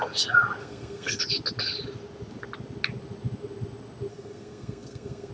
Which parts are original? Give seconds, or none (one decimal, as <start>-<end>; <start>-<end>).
0.0-0.6; 1.2-4.1

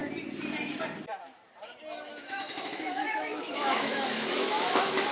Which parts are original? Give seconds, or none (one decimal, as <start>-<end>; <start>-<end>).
0.0-2.1

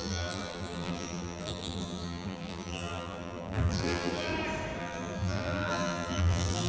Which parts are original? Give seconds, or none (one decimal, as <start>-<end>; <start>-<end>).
4.3-4.8

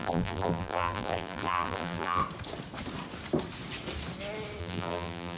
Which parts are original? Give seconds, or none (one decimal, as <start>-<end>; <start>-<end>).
2.2-4.6

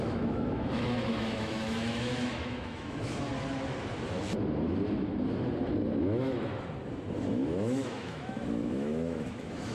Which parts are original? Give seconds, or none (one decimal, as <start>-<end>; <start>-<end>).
3.3-6.0; 6.5-7.3

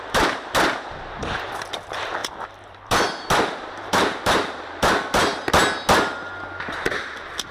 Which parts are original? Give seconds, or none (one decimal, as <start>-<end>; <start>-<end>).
5.3-6.9

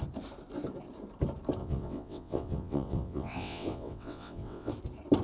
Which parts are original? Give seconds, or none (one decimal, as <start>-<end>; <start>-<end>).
0.0-1.6; 4.7-5.2

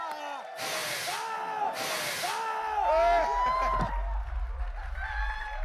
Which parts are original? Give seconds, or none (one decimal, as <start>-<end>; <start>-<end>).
0.0-5.6